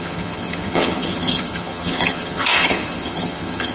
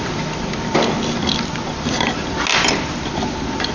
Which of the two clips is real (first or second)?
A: second